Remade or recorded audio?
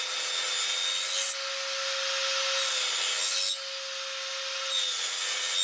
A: recorded